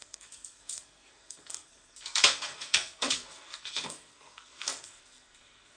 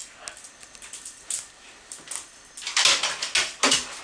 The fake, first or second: first